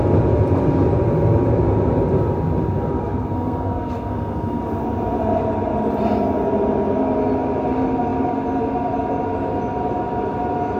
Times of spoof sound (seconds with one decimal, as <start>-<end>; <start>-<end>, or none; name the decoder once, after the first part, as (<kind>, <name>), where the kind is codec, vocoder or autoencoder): 3.0-4.6 (codec, SNAC)